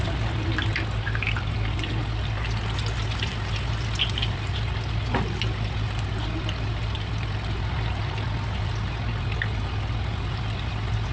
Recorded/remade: recorded